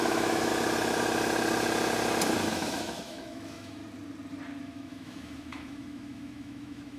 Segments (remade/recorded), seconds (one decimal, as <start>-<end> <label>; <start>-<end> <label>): 0.0-0.5 remade; 0.5-2.5 recorded; 2.5-3.8 remade; 3.8-4.6 recorded; 4.6-7.0 remade